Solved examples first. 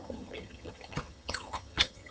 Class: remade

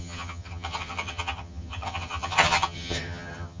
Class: remade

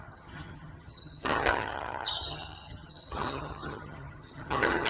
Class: remade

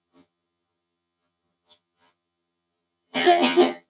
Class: remade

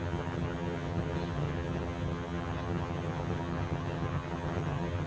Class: remade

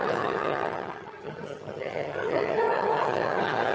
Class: remade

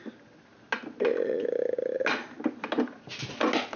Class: recorded